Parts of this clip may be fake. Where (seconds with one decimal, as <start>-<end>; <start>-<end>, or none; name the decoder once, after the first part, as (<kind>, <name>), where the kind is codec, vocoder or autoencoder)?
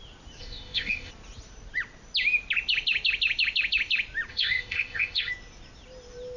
0.4-1.1 (codec, ZipCodec); 4.3-5.3